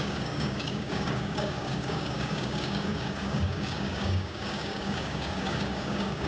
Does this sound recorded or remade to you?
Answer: remade